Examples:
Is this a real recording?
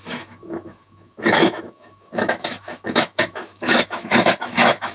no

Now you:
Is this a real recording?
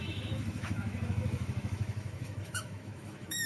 no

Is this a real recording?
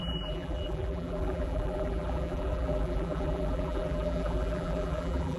no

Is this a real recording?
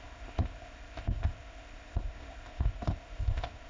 no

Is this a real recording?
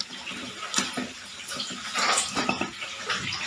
yes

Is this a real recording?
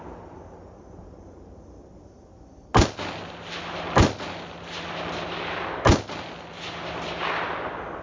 yes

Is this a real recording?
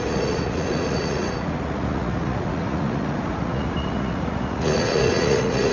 no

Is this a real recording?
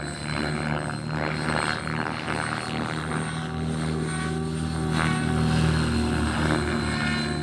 yes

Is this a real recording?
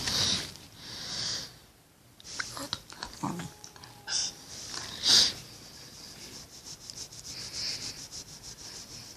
yes